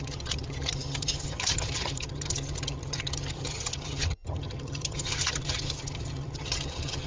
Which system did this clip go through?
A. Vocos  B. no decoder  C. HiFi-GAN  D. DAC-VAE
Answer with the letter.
C